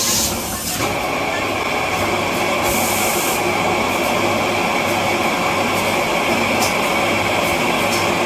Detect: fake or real real